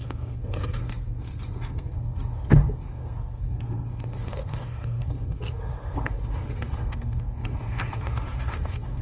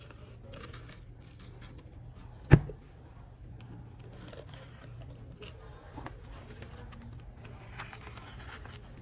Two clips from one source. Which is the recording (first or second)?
second